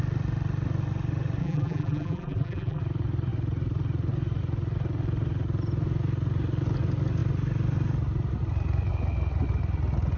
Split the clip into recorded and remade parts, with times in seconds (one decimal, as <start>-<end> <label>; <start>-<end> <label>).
0.0-1.4 recorded; 1.4-2.8 remade; 2.8-10.2 recorded